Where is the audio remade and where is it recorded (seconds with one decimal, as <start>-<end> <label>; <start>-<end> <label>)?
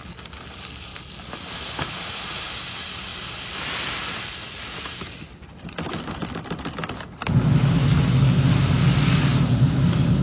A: 0.0-10.2 recorded